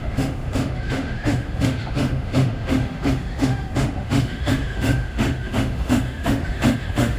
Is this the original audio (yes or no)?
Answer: no